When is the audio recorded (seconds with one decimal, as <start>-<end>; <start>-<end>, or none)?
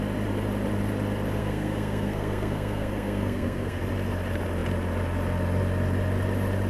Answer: 0.0-1.4; 3.8-6.7